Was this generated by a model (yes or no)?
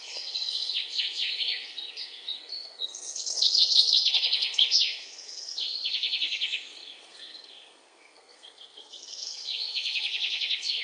yes